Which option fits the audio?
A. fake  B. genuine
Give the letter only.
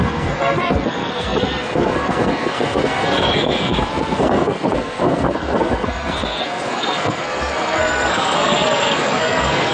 A